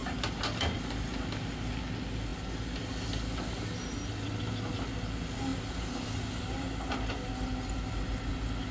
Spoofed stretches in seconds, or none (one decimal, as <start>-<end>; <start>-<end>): none